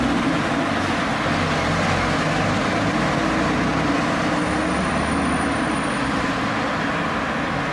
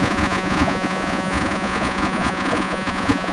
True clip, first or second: first